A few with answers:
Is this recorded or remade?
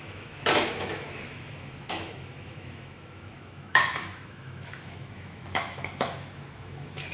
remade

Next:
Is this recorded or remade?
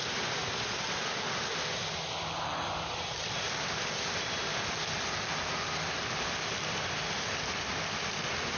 recorded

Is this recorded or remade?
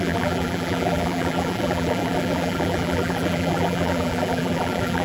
remade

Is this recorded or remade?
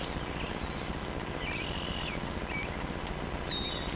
recorded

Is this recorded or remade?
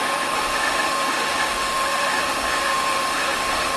remade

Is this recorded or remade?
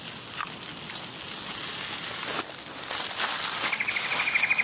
recorded